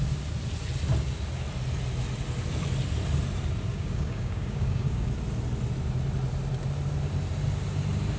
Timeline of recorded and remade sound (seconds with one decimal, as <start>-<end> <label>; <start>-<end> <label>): 0.0-3.7 recorded; 3.7-5.1 remade; 5.1-8.2 recorded